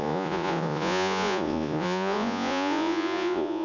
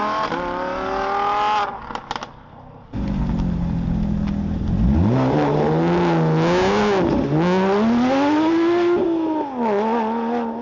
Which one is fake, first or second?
first